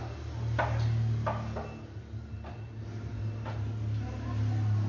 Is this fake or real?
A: real